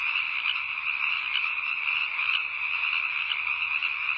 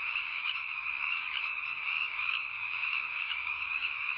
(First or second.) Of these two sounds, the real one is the first